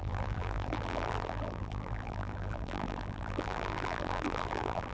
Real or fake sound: fake